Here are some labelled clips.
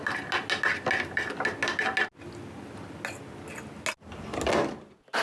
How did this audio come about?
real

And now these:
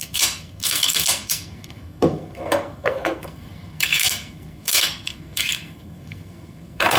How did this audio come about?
fake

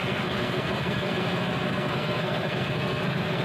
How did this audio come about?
fake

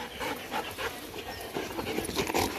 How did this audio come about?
real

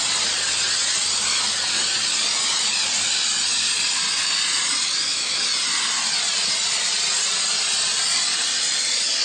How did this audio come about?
real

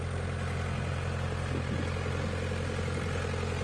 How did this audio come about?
real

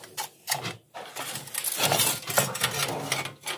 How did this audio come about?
real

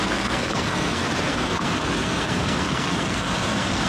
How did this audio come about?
fake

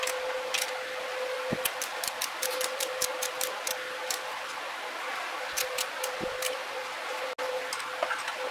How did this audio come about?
real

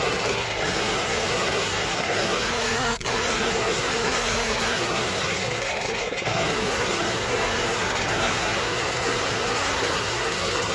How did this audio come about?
fake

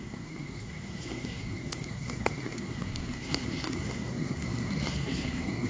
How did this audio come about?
fake